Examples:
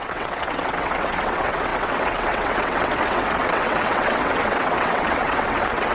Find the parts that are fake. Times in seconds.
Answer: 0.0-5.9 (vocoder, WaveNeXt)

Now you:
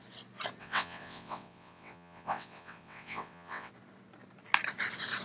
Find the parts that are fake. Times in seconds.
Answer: 0.6-3.7 (vocoder, WaveNeXt)

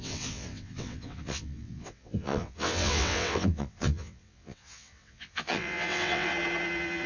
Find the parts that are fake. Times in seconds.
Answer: 0.0-6.3 (vocoder, WaveNeXt)

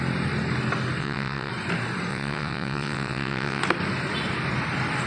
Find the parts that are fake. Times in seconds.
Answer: 1.0-1.5 (vocoder, WaveNeXt); 2.1-3.6

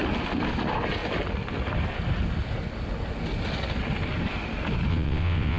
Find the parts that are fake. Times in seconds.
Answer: 4.9-5.6 (vocoder, WaveNeXt)

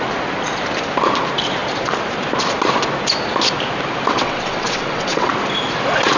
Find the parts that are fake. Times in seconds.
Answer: 4.1-5.3 (vocoder, WaveNeXt)